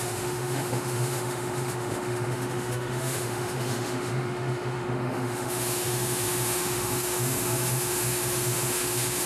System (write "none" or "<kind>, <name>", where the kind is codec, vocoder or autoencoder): autoencoder, DAC-VAE